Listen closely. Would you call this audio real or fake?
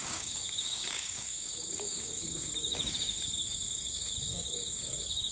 fake